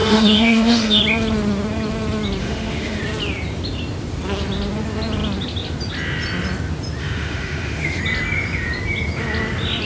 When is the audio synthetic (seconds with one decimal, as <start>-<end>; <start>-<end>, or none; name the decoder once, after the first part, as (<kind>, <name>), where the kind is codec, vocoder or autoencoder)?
0.0-1.0 (autoencoder, DAC-VAE); 2.4-3.0; 7.0-8.0